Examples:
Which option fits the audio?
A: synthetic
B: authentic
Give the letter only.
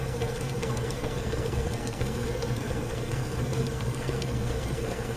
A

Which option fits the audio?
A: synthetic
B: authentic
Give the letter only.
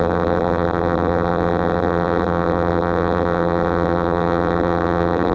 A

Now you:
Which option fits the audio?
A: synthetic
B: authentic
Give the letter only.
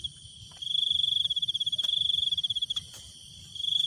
A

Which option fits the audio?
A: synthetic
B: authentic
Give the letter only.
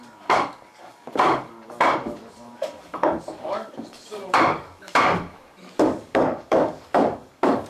A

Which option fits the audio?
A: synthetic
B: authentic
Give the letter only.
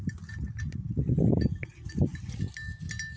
B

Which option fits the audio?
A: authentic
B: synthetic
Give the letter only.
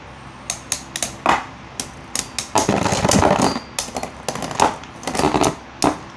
A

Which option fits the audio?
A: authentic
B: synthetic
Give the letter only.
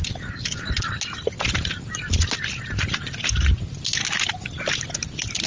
A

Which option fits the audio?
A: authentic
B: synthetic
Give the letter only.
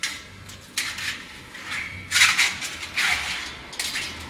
A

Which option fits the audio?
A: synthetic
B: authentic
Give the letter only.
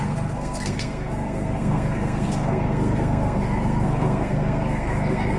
A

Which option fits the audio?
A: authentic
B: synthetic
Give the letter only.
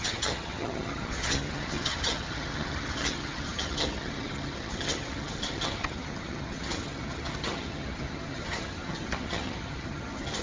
B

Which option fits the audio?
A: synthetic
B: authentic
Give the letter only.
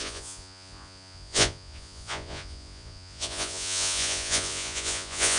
A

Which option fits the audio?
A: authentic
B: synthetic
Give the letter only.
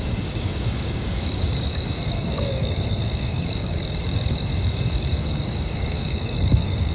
B